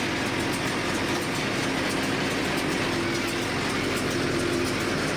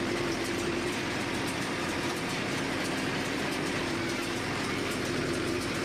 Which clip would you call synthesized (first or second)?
second